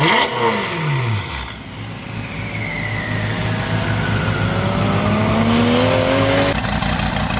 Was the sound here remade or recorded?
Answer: recorded